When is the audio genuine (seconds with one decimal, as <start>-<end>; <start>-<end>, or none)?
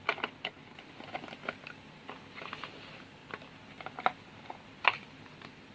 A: 0.0-5.7